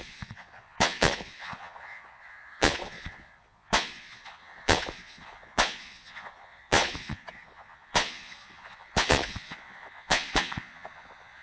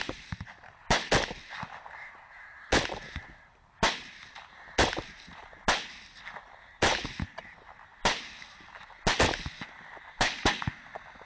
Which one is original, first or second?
second